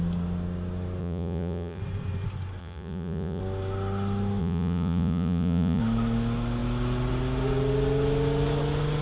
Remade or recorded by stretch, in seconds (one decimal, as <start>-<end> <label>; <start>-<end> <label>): 0.0-1.0 recorded; 1.0-1.8 remade; 1.8-2.6 recorded; 2.6-3.4 remade; 3.4-4.4 recorded; 4.4-5.8 remade; 5.8-9.0 recorded

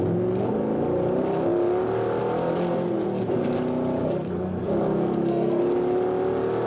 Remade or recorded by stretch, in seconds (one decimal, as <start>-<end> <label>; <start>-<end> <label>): 0.0-4.0 recorded; 4.0-5.6 remade; 5.6-6.7 recorded